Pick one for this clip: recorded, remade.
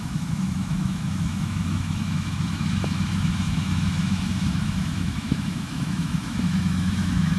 remade